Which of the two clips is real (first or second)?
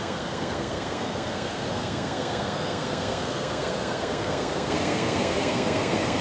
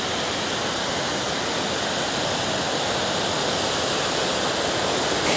second